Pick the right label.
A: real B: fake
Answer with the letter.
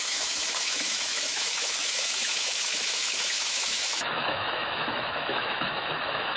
B